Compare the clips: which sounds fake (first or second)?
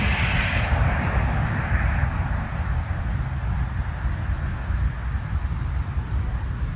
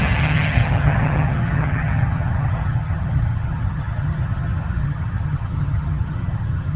second